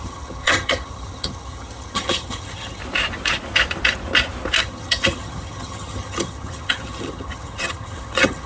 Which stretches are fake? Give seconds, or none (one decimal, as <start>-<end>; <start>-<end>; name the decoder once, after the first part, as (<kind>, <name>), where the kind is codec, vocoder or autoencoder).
0.0-2.8 (vocoder, HiFi-GAN); 4.6-8.5